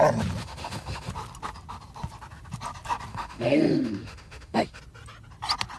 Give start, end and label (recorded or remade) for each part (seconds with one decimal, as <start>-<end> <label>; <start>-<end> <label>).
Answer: 0.0-0.4 recorded; 0.4-1.1 remade; 1.1-3.1 recorded; 3.1-4.8 remade; 4.8-5.8 recorded

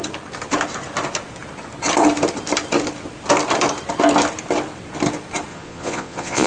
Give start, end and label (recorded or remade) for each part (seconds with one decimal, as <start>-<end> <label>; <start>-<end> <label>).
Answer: 0.0-5.5 recorded; 5.5-6.5 remade

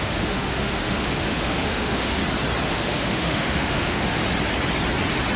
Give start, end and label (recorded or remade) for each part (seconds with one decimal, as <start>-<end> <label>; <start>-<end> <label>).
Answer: 0.0-2.2 remade; 2.2-2.7 recorded; 2.7-4.2 remade; 4.2-5.4 recorded

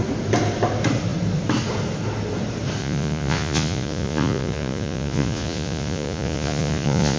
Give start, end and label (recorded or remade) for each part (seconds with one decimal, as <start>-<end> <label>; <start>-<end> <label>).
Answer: 0.0-2.8 recorded; 2.8-7.2 remade

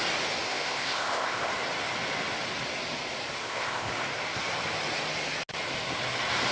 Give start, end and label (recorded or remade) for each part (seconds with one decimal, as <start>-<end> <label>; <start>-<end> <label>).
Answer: 0.0-0.5 recorded; 0.5-1.5 remade; 1.5-3.4 recorded; 3.4-3.9 remade; 3.9-6.5 recorded

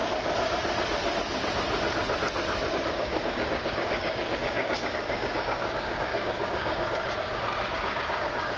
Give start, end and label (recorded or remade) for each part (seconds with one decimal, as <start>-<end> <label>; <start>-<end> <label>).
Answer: 0.0-2.7 recorded; 2.7-8.6 remade

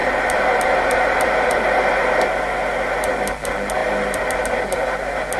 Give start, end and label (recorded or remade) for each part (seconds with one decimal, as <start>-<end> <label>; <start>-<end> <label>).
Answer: 0.0-1.8 remade; 1.8-5.4 recorded